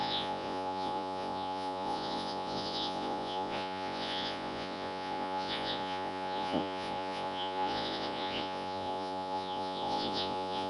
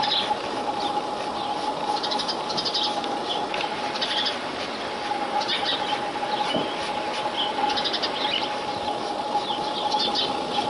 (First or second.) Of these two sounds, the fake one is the first